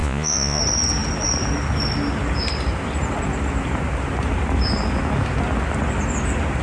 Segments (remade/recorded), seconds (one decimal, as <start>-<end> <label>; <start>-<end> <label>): 0.0-0.6 remade; 0.6-6.6 recorded